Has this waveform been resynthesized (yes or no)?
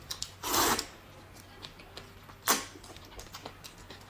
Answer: no